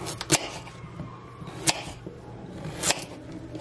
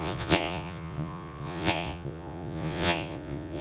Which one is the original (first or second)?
first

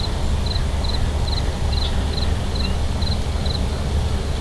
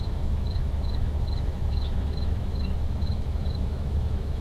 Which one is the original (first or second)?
first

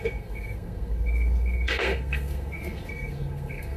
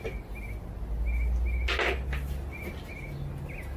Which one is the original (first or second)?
second